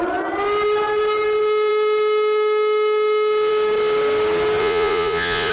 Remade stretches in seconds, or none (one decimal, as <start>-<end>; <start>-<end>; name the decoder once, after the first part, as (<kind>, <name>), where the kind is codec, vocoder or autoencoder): 4.6-5.5 (vocoder, Vocos)